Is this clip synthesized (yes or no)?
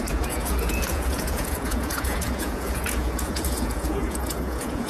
yes